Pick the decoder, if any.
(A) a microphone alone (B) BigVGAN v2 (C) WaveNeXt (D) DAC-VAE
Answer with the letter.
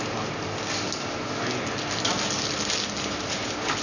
A